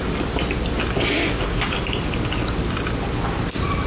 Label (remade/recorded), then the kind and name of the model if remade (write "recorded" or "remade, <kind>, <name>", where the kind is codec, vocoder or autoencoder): recorded